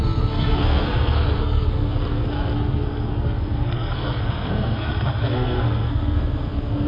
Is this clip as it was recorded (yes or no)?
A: no